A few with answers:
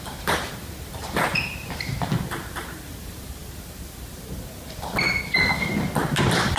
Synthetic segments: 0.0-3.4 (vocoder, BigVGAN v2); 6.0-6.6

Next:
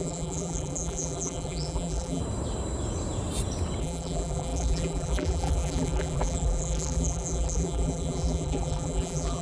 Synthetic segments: 0.0-2.2 (vocoder, BigVGAN v2); 3.8-9.4

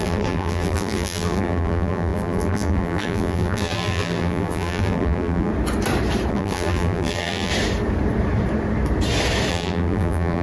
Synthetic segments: 0.0-5.5 (vocoder, BigVGAN v2); 6.3-7.5; 9.5-10.4

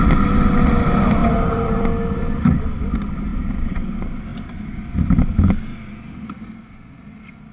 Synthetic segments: 1.2-1.8 (vocoder, BigVGAN v2); 3.3-3.8

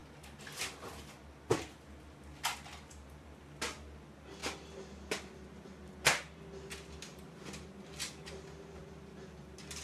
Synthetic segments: none